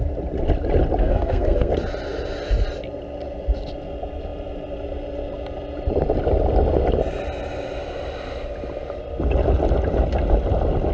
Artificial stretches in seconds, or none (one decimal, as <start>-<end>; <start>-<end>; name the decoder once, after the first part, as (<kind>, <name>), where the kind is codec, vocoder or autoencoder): 1.0-1.7 (codec, SNAC)